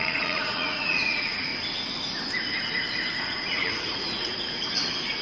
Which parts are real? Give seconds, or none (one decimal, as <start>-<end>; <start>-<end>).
1.5-3.2